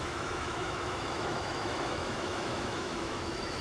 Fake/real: fake